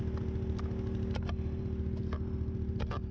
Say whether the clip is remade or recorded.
recorded